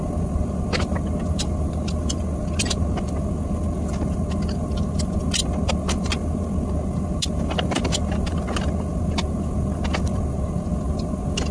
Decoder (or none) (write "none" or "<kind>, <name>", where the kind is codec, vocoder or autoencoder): none